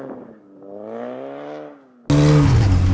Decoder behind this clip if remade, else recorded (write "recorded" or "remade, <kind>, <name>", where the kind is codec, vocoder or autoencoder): recorded